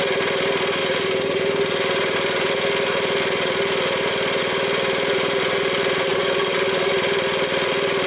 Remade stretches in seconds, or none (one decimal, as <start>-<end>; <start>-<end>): 6.1-6.9